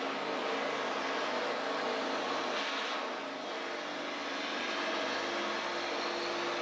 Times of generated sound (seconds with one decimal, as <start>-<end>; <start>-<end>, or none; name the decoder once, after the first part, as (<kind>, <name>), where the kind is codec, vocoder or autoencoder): none